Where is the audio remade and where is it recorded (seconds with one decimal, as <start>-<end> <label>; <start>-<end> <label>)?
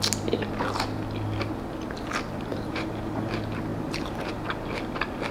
0.0-2.5 recorded; 2.5-3.3 remade; 3.3-3.7 recorded; 3.7-4.3 remade; 4.3-5.3 recorded